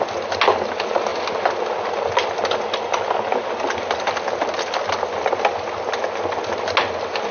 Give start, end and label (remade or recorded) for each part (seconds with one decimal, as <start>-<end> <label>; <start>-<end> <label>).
0.0-7.3 recorded